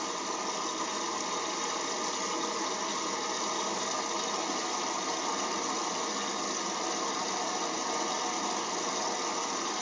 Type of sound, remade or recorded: recorded